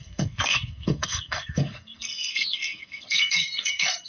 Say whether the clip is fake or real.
fake